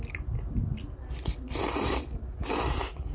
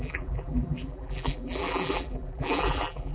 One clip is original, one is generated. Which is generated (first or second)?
second